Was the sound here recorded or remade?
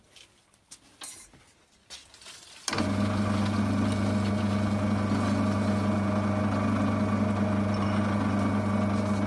recorded